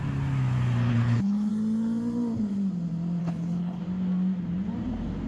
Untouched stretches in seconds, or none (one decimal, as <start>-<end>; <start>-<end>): 0.0-0.9; 1.5-3.2; 3.8-5.3

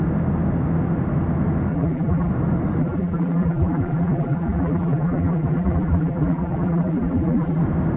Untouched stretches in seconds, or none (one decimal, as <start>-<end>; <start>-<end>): 0.0-1.7; 2.3-2.8; 7.6-8.0

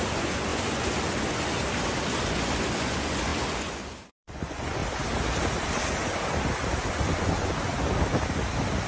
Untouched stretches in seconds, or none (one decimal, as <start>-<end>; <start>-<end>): 4.8-6.9; 7.7-8.9

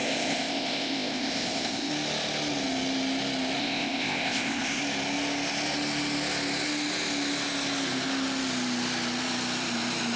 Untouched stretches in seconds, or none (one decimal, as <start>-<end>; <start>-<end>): 1.9-3.6; 4.8-10.2

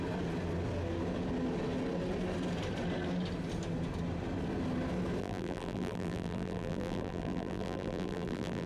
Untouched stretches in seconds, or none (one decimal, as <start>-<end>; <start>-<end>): 0.0-5.2

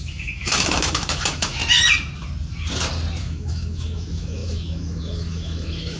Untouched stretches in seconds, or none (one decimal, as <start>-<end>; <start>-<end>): 1.6-3.2